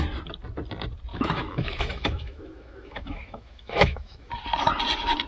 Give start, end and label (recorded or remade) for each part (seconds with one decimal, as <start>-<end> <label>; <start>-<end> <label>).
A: 0.0-1.1 recorded; 1.1-4.3 remade; 4.3-5.3 recorded